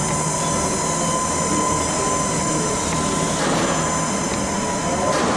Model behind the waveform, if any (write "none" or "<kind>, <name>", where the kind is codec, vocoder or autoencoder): none